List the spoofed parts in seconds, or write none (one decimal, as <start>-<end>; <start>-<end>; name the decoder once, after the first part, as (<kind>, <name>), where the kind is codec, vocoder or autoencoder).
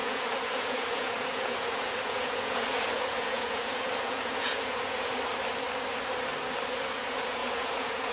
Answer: 0.0-5.1 (vocoder, Vocos); 6.8-8.1